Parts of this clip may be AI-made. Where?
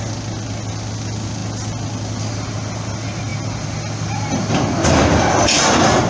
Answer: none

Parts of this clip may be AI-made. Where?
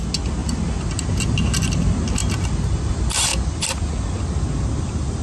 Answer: none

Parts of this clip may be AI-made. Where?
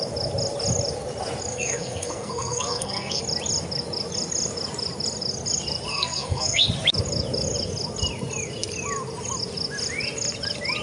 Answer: 1.5-3.2; 5.9-6.7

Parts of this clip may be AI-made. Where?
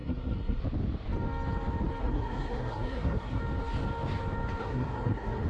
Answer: 0.0-0.6; 2.0-3.4; 4.6-5.5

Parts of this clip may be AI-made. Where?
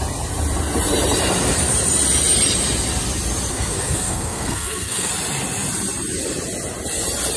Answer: 3.5-5.1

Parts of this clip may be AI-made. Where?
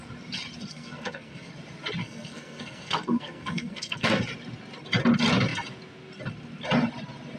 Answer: 0.7-1.5; 2.0-4.2